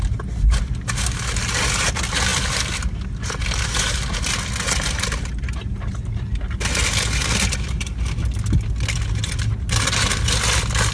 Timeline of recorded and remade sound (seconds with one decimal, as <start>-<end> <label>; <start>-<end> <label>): 0.0-10.9 recorded